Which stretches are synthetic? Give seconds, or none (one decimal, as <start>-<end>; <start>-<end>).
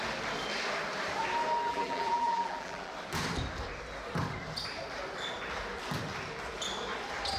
1.7-2.9